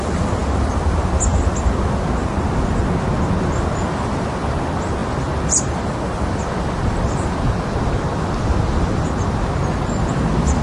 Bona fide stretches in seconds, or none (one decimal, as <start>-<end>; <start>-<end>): 0.0-10.6

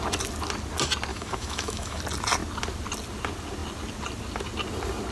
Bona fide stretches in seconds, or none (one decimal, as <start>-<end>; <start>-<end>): 0.0-1.1; 2.0-5.1

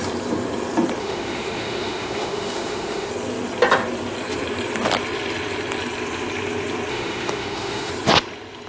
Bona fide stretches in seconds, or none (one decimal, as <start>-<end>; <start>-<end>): 0.0-1.0; 3.1-6.9; 7.9-8.7

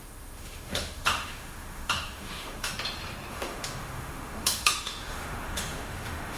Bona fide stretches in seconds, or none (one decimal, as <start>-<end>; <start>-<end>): 2.7-3.3

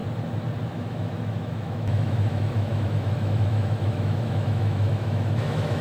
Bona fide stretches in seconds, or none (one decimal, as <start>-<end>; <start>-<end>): 0.0-0.7

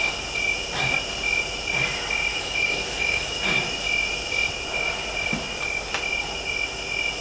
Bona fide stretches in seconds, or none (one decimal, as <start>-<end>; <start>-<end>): 0.0-2.3; 3.5-7.2

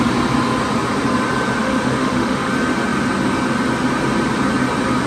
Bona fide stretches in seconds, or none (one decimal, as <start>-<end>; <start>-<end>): 0.0-1.6; 2.5-5.1